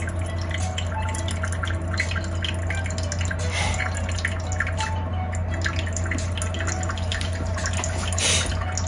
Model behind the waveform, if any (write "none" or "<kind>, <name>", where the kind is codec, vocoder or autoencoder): none